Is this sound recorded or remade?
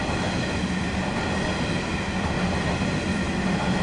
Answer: recorded